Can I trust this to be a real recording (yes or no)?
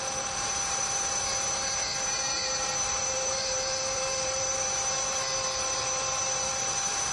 no